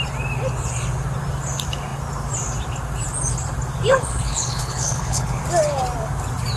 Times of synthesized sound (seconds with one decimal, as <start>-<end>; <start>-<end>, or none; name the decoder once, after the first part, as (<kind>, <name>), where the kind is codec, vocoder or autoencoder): 3.9-5.4 (codec, HILCodec)